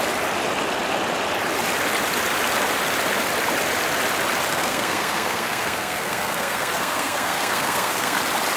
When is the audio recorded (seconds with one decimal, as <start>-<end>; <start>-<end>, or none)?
0.0-4.5; 8.2-8.6